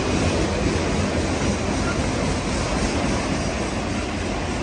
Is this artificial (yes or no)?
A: no